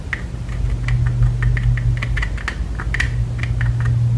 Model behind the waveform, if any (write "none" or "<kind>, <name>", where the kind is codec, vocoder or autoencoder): none